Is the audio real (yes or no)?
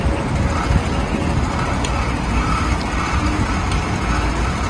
yes